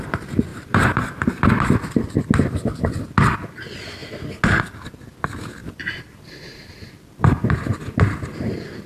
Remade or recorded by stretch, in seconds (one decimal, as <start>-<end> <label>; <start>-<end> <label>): 0.0-0.5 recorded; 0.5-1.4 remade; 1.4-5.6 recorded; 5.6-7.8 remade; 7.8-8.9 recorded